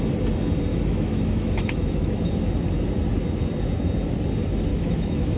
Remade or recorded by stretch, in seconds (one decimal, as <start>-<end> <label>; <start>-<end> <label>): 0.0-0.7 recorded; 0.7-2.3 remade; 2.3-4.7 recorded; 4.7-5.4 remade

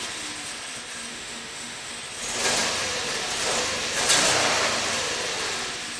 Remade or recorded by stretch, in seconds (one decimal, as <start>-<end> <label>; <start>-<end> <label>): 0.0-1.1 recorded; 1.1-1.9 remade; 1.9-6.0 recorded

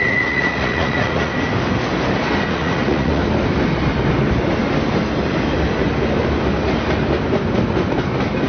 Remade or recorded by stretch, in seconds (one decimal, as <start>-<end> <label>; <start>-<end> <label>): 0.0-1.3 remade; 1.3-2.5 recorded; 2.5-3.2 remade; 3.2-8.5 recorded

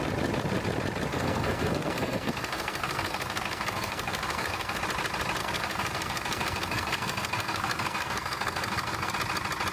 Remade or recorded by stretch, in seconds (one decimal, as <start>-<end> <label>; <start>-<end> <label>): 0.0-1.1 recorded; 1.1-4.8 remade; 4.8-5.4 recorded; 5.4-9.1 remade; 9.1-9.7 recorded

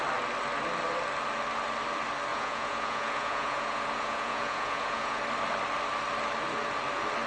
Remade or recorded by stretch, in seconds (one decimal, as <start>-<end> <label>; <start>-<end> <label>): 0.0-2.3 recorded; 2.3-5.2 remade; 5.2-7.3 recorded

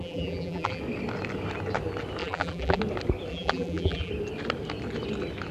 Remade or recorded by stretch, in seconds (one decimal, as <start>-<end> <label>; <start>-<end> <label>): 0.0-0.8 remade; 0.8-2.2 recorded; 2.2-2.8 remade; 2.8-3.3 recorded; 3.3-4.1 remade; 4.1-5.5 recorded

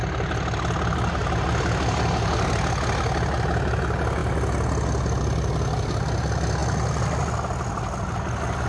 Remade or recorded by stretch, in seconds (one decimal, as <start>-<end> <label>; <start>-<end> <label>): 0.0-8.7 recorded

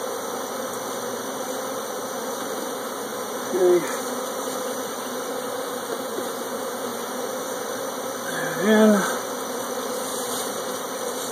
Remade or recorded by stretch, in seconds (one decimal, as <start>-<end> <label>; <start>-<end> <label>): 0.0-3.1 recorded; 3.1-3.6 remade; 3.6-10.1 recorded; 10.1-10.9 remade; 10.9-11.3 recorded